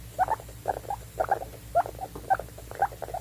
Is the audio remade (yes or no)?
no